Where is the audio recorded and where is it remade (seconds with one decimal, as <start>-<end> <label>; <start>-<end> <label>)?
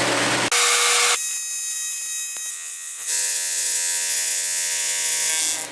0.0-2.5 recorded; 2.5-5.3 remade; 5.3-5.7 recorded